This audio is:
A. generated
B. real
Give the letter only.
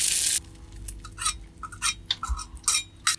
B